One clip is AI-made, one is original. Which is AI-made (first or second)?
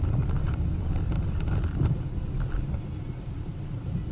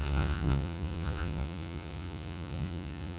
second